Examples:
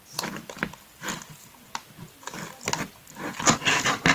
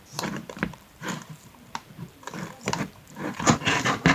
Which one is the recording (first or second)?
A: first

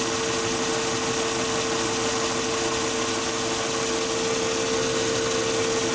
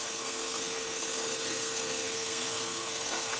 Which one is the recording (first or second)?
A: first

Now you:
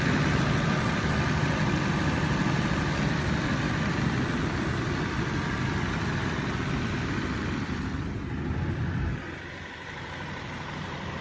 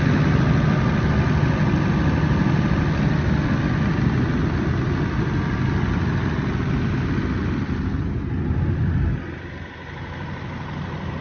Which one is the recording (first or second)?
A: second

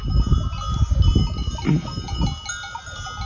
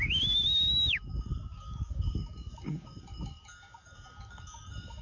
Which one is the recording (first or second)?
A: first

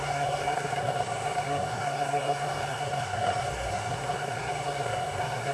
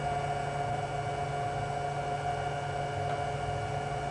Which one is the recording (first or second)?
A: second